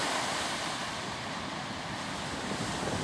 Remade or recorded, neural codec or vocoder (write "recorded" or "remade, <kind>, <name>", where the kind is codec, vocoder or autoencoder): recorded